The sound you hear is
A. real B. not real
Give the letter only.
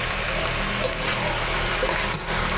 A